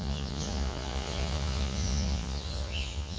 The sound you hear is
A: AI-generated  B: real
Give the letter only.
A